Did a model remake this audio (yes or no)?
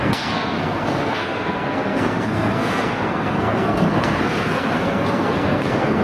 yes